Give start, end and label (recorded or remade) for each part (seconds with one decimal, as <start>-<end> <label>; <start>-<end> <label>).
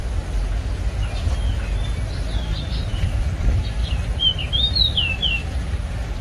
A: 0.0-6.2 recorded